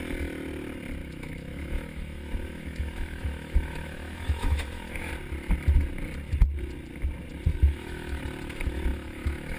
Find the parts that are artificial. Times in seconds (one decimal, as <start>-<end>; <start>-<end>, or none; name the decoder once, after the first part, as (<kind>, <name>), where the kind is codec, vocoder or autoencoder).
1.0-5.1 (autoencoder, DAC-VAE); 7.5-8.2; 8.9-9.6